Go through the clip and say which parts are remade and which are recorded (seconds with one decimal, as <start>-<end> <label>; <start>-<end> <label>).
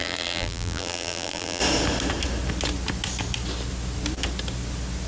0.0-1.6 remade; 1.6-5.1 recorded